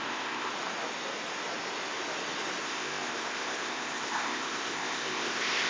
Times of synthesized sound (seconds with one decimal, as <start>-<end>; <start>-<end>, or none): 0.0-0.5; 2.6-5.7